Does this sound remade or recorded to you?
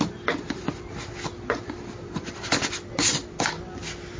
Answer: recorded